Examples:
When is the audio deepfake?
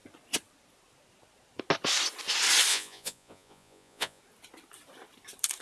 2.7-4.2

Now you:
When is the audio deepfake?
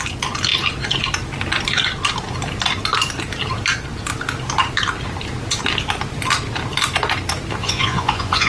7.6-8.5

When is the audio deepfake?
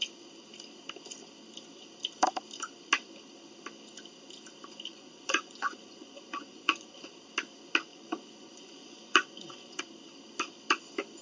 4.9-7.0; 7.9-9.8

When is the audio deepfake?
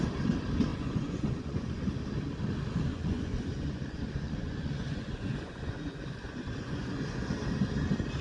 0.7-1.9; 2.9-7.3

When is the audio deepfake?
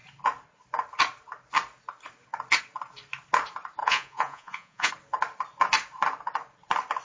3.8-4.9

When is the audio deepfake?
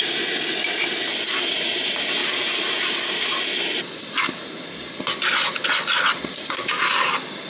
none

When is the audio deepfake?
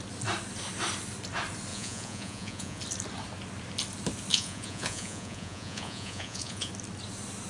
1.7-2.8; 4.3-6.7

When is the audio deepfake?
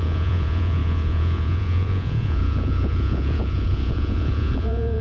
0.0-5.0